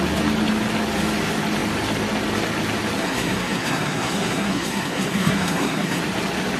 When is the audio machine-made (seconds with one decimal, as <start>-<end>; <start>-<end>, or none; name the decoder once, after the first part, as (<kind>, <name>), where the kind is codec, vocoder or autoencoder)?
3.0-6.0 (codec, SNAC)